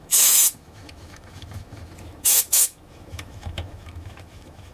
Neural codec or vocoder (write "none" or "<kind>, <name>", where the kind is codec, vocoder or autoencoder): autoencoder, DAC-VAE